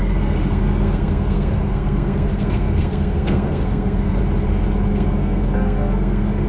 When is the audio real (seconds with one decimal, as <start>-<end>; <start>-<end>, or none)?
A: 4.2-4.9